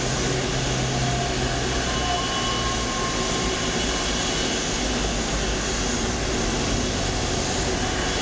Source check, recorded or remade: recorded